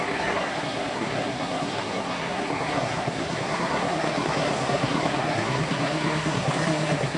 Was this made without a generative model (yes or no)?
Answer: no